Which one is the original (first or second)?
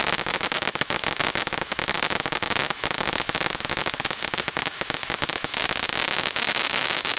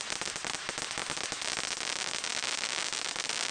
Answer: second